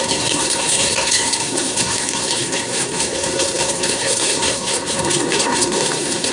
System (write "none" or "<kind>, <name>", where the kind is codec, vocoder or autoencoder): codec, SNAC